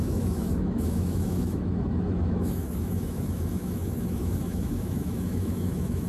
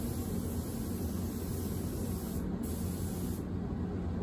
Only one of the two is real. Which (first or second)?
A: second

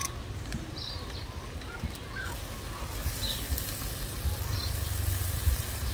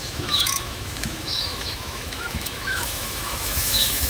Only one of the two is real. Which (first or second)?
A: first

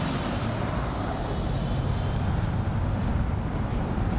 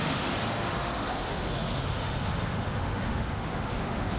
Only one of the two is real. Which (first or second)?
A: first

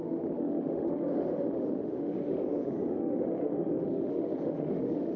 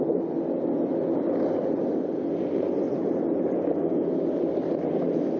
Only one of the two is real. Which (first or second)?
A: second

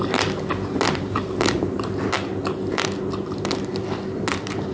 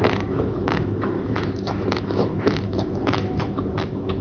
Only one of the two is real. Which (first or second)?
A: first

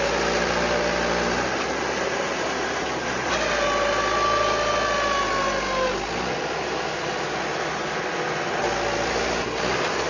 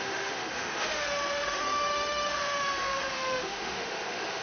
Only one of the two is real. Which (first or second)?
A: first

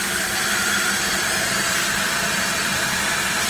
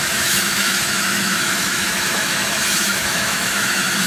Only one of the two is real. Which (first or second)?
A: first